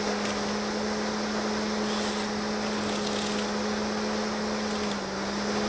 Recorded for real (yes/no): yes